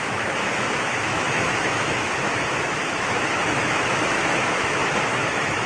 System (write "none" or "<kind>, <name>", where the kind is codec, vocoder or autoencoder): autoencoder, DAC-VAE